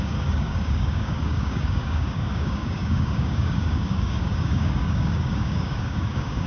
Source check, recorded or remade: remade